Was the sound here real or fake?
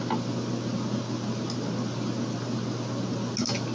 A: real